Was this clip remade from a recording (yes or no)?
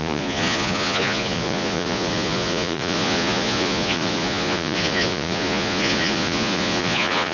yes